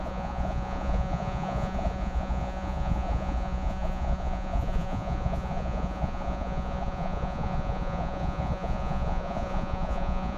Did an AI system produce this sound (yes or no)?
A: yes